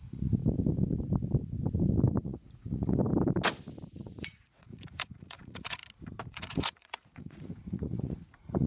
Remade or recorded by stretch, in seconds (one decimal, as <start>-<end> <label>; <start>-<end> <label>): 0.0-0.4 remade; 0.4-2.2 recorded; 2.2-3.0 remade; 3.0-3.9 recorded; 3.9-5.8 remade; 5.8-6.3 recorded; 6.3-8.7 remade